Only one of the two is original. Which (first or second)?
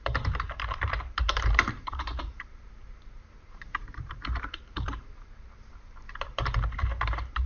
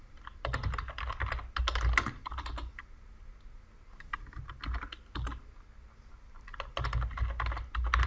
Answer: second